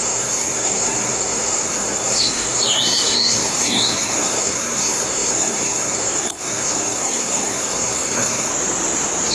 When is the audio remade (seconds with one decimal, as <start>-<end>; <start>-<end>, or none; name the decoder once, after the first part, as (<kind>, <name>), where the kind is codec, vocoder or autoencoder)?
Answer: 0.0-8.5 (codec, SNAC)